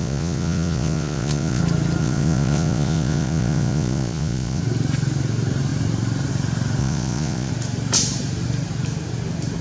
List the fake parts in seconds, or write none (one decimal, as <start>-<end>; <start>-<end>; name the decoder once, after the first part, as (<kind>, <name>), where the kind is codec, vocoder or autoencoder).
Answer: 0.0-1.6 (vocoder, Vocos); 2.0-4.6; 6.8-7.5